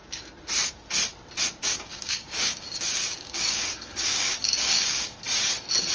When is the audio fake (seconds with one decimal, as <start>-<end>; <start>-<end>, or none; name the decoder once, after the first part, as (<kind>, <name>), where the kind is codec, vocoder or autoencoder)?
1.7-5.2 (codec, DAC)